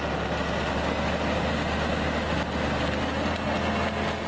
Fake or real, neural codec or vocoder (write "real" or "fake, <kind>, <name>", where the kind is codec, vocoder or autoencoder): real